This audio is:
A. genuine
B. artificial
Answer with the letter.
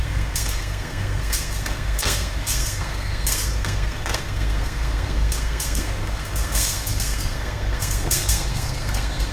B